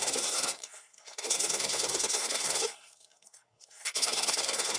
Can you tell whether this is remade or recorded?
remade